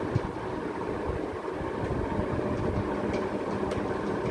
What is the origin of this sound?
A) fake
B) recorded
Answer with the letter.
B